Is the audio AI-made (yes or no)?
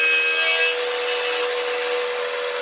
no